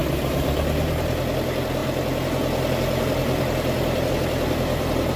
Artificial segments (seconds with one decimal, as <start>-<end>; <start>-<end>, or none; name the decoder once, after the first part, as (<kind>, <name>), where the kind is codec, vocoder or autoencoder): 0.0-0.6 (vocoder, BigVGAN v2)